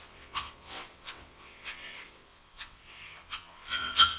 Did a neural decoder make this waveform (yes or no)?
yes